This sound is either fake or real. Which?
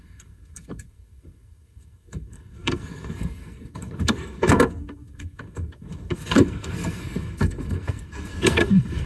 fake